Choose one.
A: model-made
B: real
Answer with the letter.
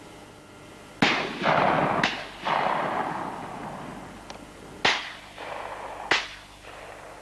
B